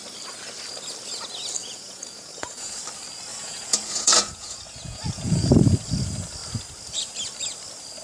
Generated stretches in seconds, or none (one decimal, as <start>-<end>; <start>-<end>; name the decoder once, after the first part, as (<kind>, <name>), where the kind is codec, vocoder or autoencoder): 1.6-2.8 (vocoder, Vocos); 3.3-5.5